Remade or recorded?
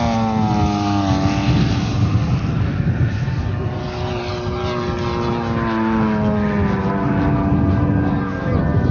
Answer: recorded